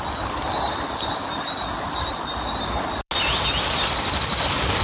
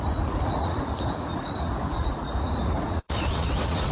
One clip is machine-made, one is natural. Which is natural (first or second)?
first